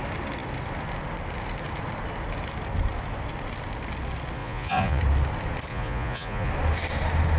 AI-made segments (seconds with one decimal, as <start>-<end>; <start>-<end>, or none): 4.4-5.0; 5.7-6.5